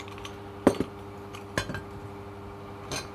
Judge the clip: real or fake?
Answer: real